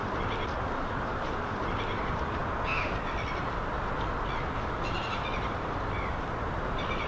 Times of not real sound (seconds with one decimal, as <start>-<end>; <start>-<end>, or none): none